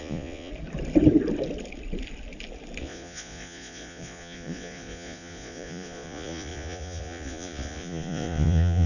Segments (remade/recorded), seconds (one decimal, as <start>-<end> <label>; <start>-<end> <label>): 0.0-0.5 remade; 0.5-2.8 recorded; 2.8-8.9 remade